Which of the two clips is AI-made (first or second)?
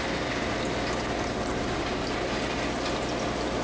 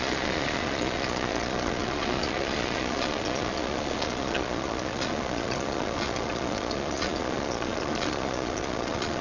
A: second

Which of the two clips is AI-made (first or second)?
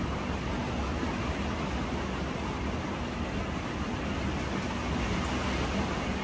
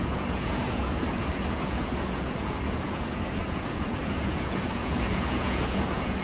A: second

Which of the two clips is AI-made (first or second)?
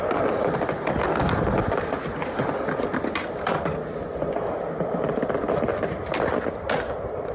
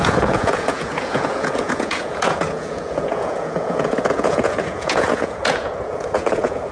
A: second